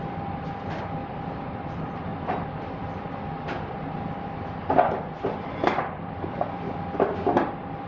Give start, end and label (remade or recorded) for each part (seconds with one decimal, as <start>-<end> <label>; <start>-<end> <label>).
0.0-7.9 recorded